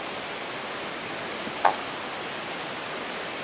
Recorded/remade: recorded